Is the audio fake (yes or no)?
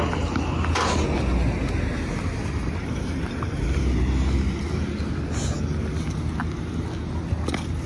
no